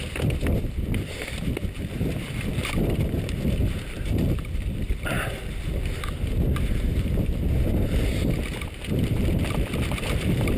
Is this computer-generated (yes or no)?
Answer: yes